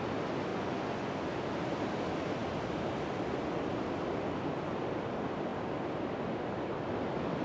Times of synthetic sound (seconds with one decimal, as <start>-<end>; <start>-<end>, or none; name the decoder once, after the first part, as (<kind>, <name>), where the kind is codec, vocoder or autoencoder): 0.5-1.1 (vocoder, Vocos)